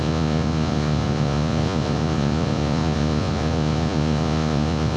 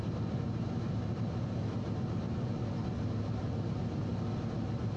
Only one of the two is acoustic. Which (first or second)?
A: second